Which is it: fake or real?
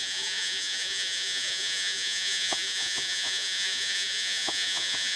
fake